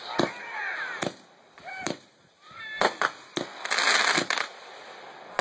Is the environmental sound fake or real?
real